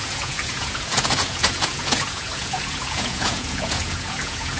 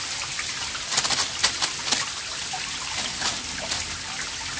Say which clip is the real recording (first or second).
second